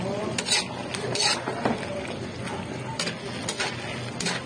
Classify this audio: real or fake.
real